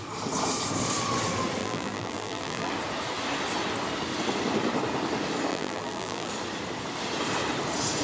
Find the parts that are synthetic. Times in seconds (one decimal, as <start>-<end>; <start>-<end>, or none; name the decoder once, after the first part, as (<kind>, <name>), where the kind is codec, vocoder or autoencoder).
1.6-2.7 (vocoder, BigVGAN v2); 5.5-6.3